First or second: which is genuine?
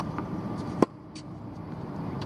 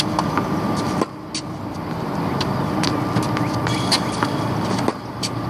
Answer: second